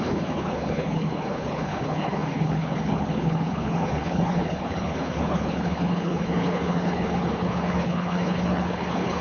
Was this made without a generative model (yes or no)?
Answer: no